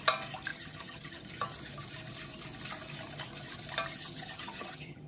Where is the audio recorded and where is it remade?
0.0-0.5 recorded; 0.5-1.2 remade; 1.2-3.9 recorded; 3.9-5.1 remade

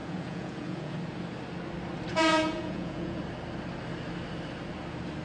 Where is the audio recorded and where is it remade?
0.0-0.9 remade; 0.9-2.1 recorded; 2.1-3.2 remade; 3.2-5.2 recorded

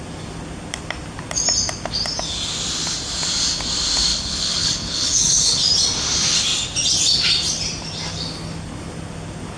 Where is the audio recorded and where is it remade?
0.0-4.1 recorded; 4.1-5.6 remade; 5.6-9.6 recorded

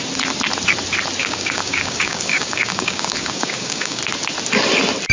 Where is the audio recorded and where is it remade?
0.0-1.2 recorded; 1.2-4.0 remade; 4.0-5.1 recorded